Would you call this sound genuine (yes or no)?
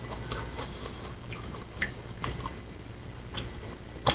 yes